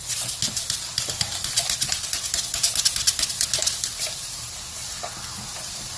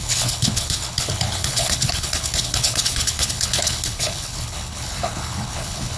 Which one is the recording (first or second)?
first